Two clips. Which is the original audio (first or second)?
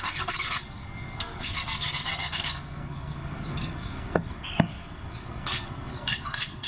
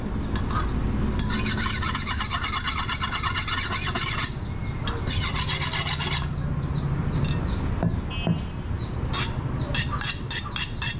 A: second